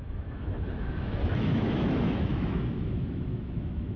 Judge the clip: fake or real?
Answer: fake